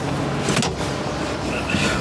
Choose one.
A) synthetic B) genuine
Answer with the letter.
B